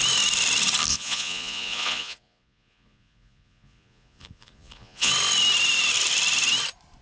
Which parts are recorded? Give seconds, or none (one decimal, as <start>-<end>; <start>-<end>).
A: 0.0-0.9; 5.1-7.0